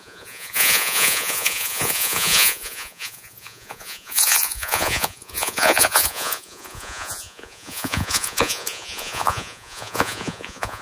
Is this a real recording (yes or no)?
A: no